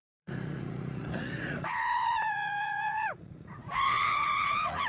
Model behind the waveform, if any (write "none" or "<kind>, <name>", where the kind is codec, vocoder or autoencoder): vocoder, Vocos